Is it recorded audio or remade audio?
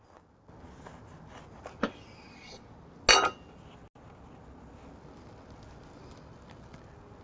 recorded